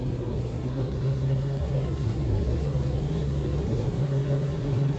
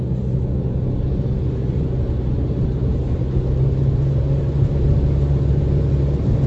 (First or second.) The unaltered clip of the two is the second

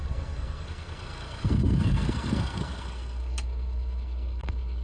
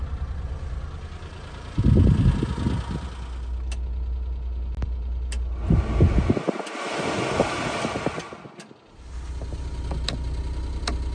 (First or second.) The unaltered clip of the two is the second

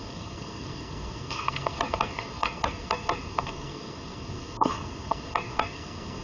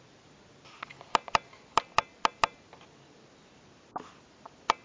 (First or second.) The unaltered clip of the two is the second